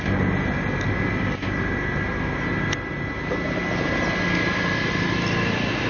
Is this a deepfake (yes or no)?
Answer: no